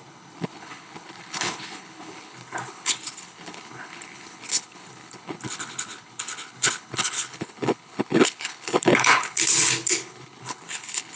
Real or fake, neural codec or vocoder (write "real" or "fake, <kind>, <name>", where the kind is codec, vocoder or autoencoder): fake, codec, HILCodec